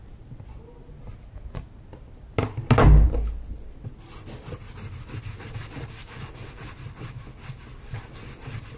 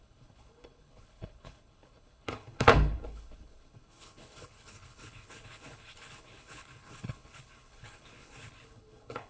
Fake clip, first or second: second